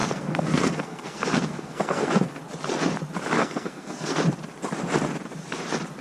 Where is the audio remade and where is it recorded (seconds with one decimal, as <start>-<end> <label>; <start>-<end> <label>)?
0.0-2.4 remade; 2.4-3.4 recorded; 3.4-4.2 remade; 4.2-6.0 recorded